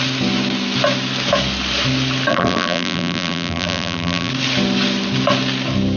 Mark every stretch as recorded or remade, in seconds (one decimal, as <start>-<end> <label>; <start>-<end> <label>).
0.0-2.3 recorded; 2.3-4.3 remade; 4.3-6.0 recorded